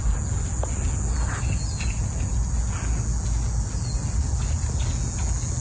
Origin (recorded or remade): recorded